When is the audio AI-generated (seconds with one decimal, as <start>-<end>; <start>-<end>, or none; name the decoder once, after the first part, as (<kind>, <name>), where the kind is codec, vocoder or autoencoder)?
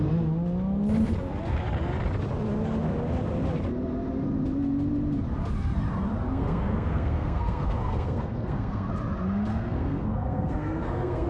6.3-8.9 (codec, SNAC); 9.5-11.3